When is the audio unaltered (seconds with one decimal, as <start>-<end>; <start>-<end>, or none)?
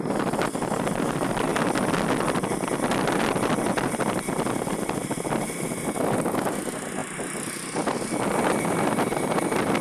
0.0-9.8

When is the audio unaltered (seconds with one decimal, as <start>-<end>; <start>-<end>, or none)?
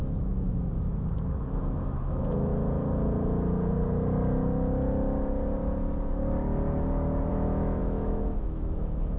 2.5-7.3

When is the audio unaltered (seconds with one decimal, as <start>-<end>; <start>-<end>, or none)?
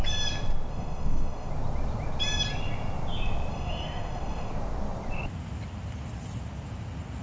0.0-0.7; 1.5-3.5; 4.5-7.2